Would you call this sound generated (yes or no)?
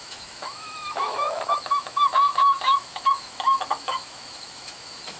yes